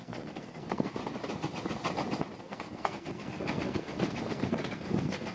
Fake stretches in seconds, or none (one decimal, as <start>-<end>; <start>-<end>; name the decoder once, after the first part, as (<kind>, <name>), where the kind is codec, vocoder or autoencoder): 0.0-1.0 (codec, SNAC); 2.4-5.3

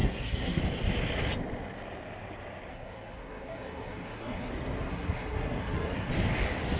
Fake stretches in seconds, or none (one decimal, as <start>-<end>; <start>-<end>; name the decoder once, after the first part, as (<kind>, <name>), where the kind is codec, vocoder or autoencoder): 0.0-0.6 (codec, SNAC); 2.7-4.5; 4.9-6.1

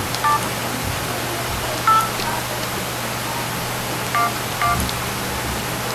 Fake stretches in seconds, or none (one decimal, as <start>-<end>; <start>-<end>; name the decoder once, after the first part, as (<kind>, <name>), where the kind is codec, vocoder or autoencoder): none

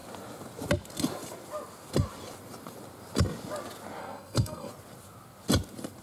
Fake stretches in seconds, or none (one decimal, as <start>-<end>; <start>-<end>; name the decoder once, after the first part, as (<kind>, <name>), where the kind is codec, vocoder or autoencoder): 4.0-4.7 (codec, SNAC)

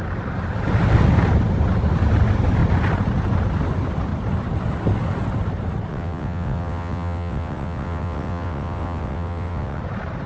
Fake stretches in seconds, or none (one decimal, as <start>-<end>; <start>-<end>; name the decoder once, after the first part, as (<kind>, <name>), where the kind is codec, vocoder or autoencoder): 5.9-9.8 (vocoder, WaveNeXt)

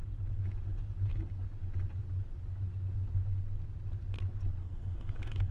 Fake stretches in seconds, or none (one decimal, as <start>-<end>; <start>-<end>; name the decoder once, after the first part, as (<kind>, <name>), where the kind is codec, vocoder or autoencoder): 4.6-5.5 (codec, SNAC)

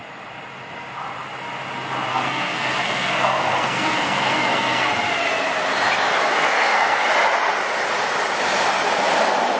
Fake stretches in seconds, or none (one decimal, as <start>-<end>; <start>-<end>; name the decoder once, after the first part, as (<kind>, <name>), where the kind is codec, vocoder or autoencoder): 2.1-4.9 (codec, SNAC); 6.1-7.1

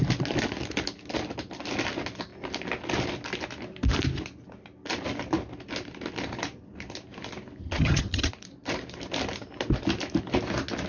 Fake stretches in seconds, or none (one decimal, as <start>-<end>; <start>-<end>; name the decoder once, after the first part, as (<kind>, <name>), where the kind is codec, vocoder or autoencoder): 7.6-8.3 (vocoder, HiFi-GAN)